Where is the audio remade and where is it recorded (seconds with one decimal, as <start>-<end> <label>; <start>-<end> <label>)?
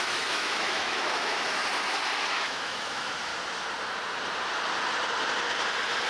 0.0-1.6 remade; 1.6-2.3 recorded; 2.3-3.3 remade; 3.3-6.1 recorded